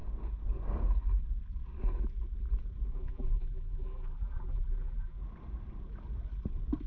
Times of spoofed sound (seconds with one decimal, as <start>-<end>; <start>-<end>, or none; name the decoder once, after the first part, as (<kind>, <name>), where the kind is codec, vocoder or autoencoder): 2.9-5.2 (vocoder, BigVGAN v2)